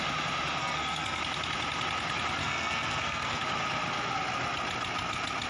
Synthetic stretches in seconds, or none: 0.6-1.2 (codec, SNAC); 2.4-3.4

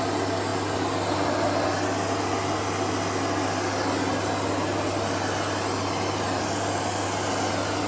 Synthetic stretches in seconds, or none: none